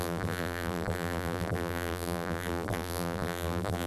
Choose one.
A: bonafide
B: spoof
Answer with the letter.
B